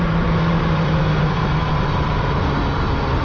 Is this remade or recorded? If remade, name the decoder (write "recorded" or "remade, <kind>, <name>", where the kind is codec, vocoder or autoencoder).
remade, vocoder, BigVGAN v2